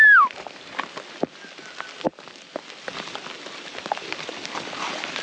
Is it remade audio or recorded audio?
recorded